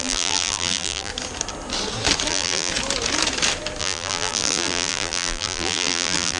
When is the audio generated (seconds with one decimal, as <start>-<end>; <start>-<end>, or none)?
0.0-1.1; 2.3-2.7; 3.8-6.4